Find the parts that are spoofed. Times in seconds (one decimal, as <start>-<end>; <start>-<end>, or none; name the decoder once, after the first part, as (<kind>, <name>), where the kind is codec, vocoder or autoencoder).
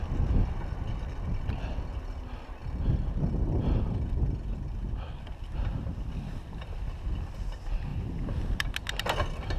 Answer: 7.9-8.7 (vocoder, BigVGAN v2)